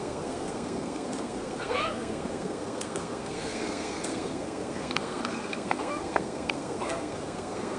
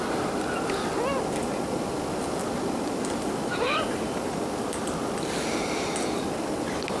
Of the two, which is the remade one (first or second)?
first